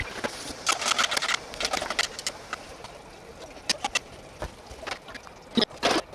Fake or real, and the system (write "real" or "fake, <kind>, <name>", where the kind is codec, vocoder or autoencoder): real